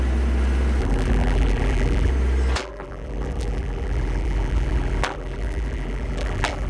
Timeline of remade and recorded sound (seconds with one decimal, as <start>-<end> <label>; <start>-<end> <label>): 0.0-0.8 recorded; 0.8-2.1 remade; 2.1-2.6 recorded; 2.6-6.7 remade